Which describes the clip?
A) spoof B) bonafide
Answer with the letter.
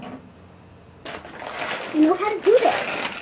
B